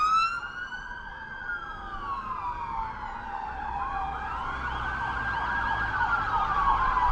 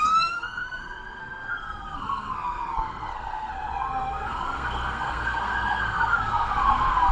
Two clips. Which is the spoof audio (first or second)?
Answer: second